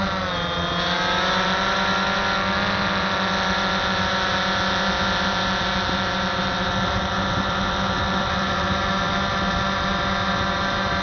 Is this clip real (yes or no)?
yes